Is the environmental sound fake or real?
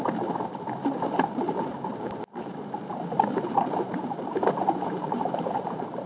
fake